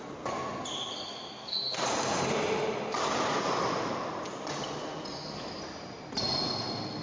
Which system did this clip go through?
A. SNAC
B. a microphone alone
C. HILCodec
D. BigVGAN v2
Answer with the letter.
B